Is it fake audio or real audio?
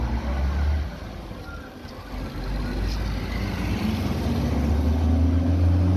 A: real